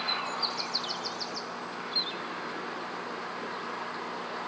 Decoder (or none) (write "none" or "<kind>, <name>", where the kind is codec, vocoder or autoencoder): none